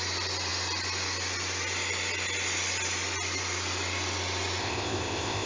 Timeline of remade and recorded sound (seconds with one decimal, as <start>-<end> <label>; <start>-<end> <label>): 0.0-4.6 recorded; 4.6-5.5 remade